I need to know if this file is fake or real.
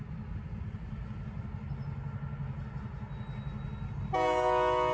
real